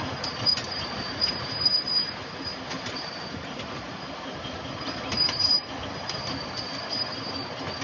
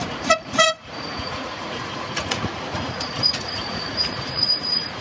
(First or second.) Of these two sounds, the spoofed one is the second